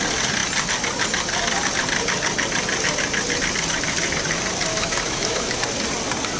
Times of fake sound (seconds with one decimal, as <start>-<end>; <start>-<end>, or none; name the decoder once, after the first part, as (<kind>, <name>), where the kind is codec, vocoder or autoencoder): 4.7-5.6 (autoencoder, DAC-VAE)